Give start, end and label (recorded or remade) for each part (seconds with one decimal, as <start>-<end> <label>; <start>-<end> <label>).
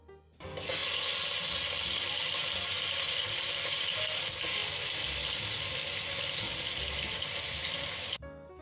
0.0-8.6 recorded